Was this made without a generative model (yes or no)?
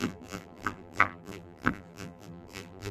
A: no